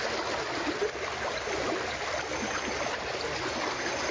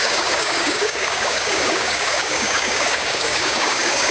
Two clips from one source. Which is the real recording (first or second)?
first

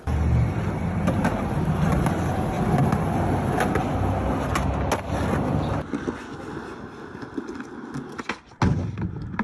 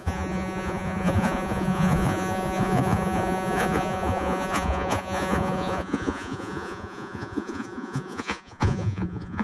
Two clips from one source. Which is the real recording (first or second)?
first